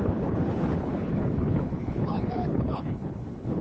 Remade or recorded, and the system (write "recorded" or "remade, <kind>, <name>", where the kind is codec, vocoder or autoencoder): remade, codec, HILCodec